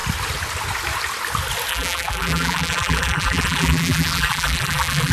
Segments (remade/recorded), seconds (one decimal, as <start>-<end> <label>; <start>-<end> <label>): 0.0-1.7 recorded; 1.7-5.1 remade